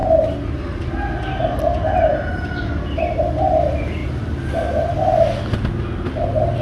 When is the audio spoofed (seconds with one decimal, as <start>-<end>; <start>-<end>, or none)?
none